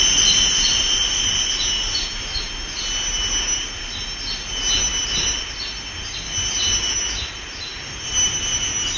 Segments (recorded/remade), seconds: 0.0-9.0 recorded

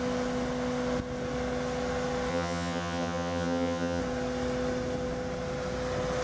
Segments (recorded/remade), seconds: 0.0-2.3 recorded; 2.3-4.0 remade; 4.0-6.2 recorded

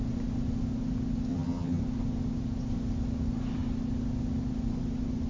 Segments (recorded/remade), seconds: 0.0-1.3 recorded; 1.3-1.8 remade; 1.8-5.3 recorded